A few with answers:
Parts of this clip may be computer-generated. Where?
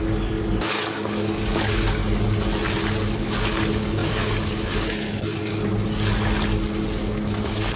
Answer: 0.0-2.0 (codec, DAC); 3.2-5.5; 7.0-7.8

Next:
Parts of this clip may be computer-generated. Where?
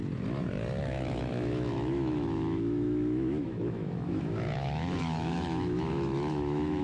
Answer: 0.8-6.8 (autoencoder, DAC-VAE)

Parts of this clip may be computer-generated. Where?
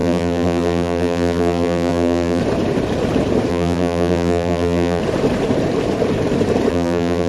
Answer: 0.0-2.4 (vocoder, BigVGAN v2); 3.5-5.0; 6.7-7.3